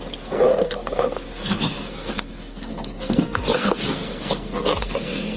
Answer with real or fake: fake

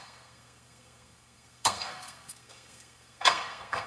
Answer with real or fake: fake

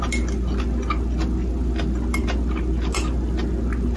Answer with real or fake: real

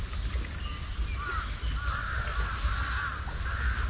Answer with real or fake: real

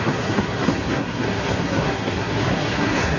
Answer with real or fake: fake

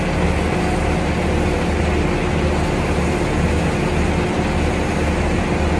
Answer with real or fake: real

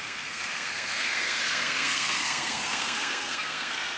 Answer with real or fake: fake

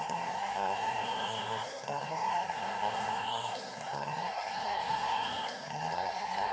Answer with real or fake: fake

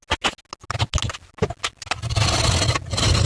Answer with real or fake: real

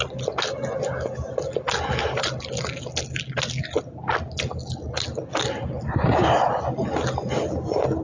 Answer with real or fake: real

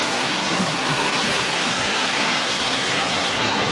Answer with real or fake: fake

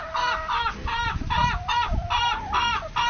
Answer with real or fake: real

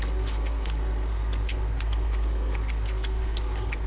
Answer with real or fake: fake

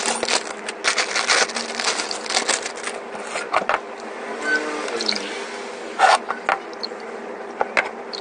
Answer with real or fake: real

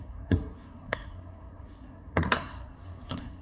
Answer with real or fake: fake